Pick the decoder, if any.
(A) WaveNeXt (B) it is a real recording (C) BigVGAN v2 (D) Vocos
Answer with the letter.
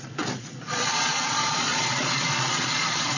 D